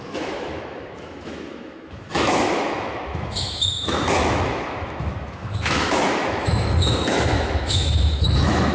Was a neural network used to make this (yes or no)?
yes